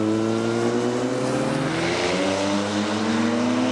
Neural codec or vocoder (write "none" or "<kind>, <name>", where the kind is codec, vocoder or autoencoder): none